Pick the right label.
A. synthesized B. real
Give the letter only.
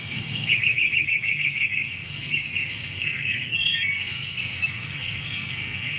A